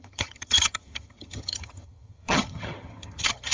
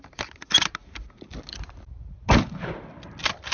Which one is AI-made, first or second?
first